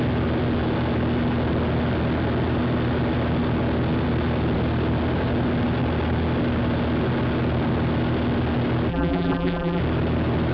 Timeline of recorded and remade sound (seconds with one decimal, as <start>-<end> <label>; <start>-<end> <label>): 0.0-8.9 recorded; 8.9-9.8 remade; 9.8-10.5 recorded